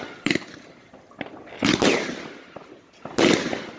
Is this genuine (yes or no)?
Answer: yes